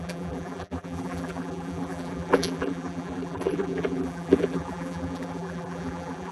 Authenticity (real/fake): fake